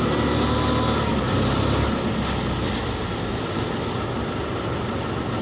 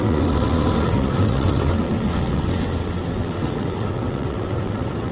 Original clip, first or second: first